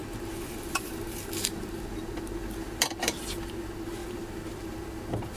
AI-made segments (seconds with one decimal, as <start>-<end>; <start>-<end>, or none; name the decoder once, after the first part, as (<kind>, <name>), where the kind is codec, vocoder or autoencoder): 0.0-3.2 (vocoder, BigVGAN v2); 4.0-4.8